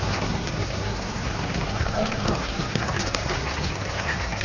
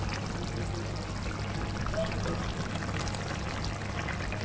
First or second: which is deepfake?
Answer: first